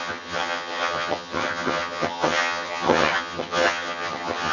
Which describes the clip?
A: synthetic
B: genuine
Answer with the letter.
A